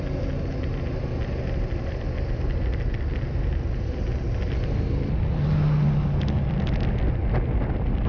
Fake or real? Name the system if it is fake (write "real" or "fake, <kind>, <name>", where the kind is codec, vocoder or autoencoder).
real